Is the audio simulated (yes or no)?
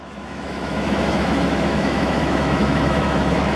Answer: yes